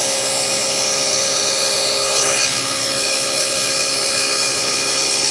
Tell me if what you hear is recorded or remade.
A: remade